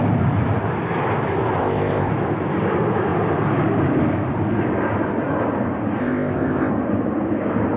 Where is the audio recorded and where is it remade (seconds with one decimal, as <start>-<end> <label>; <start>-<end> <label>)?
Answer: 0.0-1.6 recorded; 1.6-2.1 remade; 2.1-6.0 recorded; 6.0-6.7 remade; 6.7-7.8 recorded